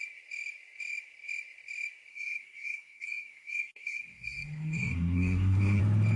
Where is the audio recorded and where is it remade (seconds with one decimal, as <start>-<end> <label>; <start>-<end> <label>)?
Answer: 0.0-2.1 recorded; 2.1-5.8 remade; 5.8-6.2 recorded